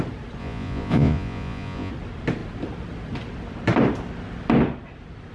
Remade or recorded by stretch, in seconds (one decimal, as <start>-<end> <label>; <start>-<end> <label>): 0.0-0.4 recorded; 0.4-1.9 remade; 1.9-5.3 recorded